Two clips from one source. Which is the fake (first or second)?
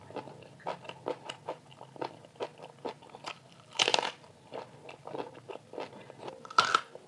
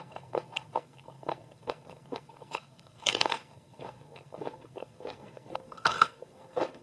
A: second